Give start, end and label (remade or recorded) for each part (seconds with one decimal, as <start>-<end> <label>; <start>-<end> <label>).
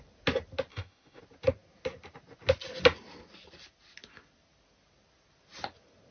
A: 0.0-0.7 recorded; 0.7-1.2 remade; 1.2-6.1 recorded